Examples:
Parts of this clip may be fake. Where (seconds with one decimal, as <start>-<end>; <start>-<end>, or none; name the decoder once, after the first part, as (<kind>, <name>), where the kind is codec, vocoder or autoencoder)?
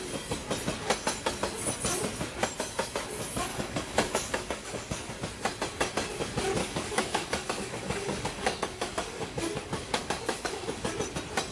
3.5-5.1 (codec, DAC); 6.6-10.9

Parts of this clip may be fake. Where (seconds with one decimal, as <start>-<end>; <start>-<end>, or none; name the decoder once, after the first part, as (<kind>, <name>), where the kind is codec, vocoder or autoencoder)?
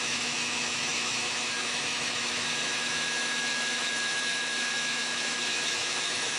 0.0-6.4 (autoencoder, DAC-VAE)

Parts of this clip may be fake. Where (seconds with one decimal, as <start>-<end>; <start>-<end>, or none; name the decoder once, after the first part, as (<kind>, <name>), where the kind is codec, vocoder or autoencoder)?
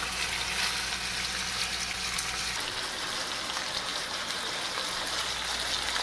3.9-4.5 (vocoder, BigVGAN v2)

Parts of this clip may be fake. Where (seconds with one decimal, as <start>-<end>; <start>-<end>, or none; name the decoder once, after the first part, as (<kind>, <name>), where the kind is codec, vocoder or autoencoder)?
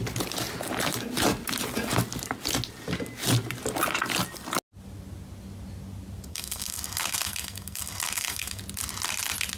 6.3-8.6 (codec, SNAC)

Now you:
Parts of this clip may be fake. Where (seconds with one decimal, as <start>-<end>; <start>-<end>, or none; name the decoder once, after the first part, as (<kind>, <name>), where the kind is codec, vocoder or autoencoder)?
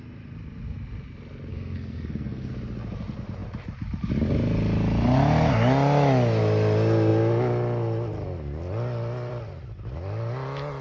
1.5-2.5 (codec, SNAC)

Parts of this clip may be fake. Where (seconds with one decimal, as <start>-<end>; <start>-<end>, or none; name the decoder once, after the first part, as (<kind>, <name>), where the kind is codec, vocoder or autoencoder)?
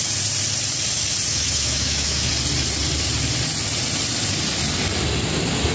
1.3-2.3 (autoencoder, DAC-VAE)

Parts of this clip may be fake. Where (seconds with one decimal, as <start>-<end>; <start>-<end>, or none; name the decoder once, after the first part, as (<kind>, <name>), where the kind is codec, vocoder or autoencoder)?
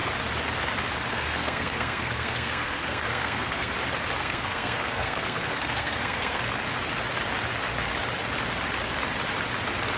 1.1-3.7 (codec, SNAC); 4.2-6.4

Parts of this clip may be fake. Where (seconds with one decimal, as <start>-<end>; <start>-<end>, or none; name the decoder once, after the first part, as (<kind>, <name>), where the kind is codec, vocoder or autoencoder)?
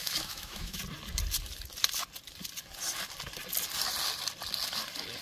0.0-0.8 (autoencoder, DAC-VAE)